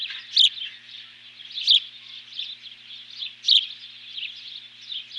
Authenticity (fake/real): real